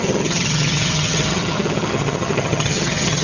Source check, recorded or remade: remade